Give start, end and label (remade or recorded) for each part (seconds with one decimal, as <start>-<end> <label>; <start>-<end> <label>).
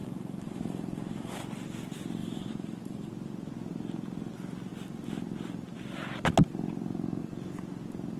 0.0-1.4 remade; 1.4-2.2 recorded; 2.2-3.1 remade; 3.1-8.2 recorded